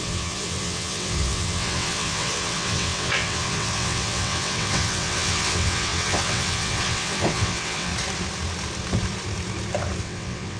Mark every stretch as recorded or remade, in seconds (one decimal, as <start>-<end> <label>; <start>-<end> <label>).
0.0-7.9 remade; 7.9-10.0 recorded; 10.0-10.6 remade